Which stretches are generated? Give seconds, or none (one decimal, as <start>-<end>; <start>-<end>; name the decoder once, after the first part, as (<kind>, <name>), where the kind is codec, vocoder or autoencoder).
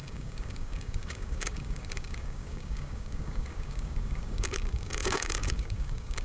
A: 0.0-6.2 (codec, DAC)